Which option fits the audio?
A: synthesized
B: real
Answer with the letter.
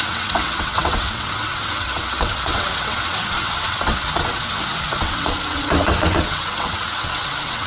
A